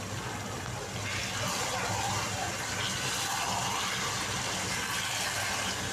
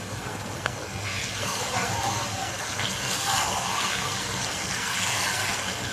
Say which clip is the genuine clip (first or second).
first